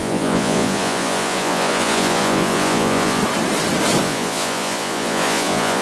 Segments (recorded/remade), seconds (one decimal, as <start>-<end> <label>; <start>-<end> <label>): 0.0-3.2 remade; 3.2-4.0 recorded; 4.0-5.8 remade